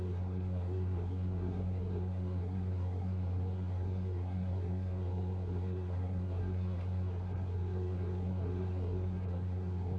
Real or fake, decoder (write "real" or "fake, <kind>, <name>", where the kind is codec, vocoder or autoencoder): fake, codec, SNAC